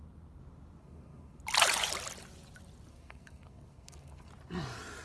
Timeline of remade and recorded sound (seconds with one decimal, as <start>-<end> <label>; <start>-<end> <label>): 0.0-0.8 recorded; 0.8-1.4 remade; 1.4-2.9 recorded; 2.9-4.3 remade; 4.3-5.0 recorded